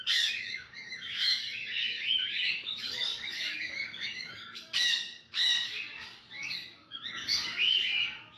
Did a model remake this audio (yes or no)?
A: yes